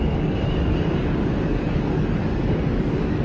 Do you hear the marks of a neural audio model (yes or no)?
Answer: yes